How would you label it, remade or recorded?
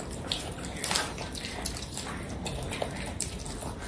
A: recorded